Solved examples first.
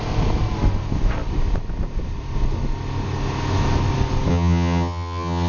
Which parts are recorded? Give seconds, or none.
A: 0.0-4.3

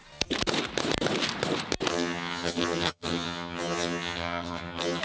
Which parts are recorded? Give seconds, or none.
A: 0.0-1.9

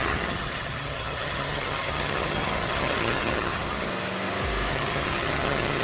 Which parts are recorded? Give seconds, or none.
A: 3.9-4.7

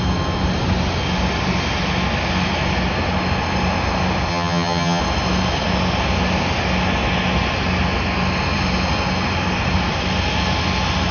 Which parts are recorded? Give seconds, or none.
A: 0.0-4.3; 5.0-11.1

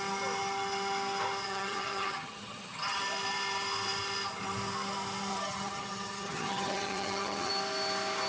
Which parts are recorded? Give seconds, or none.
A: 0.0-1.4; 3.0-5.3; 7.5-8.3

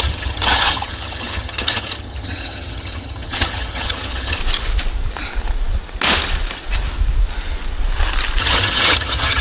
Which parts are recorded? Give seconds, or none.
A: 4.4-8.4

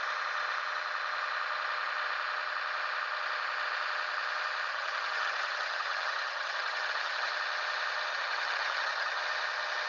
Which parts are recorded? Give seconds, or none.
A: 0.0-4.7; 7.3-8.1; 9.2-9.9

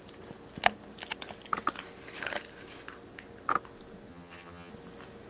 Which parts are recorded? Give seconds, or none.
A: 0.0-4.1; 4.7-5.3